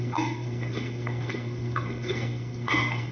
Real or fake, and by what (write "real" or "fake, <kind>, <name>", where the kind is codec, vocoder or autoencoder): fake, codec, SNAC